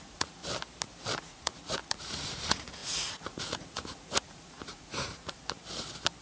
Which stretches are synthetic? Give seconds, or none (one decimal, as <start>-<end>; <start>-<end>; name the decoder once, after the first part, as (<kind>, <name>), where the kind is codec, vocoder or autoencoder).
0.0-0.4 (vocoder, Vocos); 1.2-5.4